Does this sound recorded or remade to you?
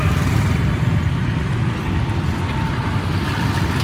recorded